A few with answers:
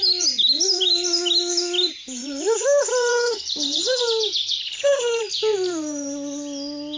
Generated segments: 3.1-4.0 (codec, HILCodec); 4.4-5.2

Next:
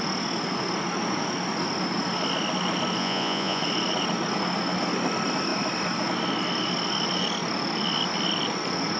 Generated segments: 3.0-3.6 (vocoder, Vocos)

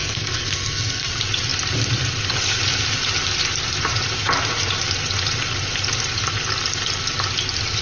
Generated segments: 0.0-1.1 (codec, SNAC)

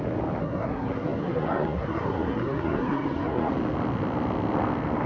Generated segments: 0.4-3.5 (codec, SNAC)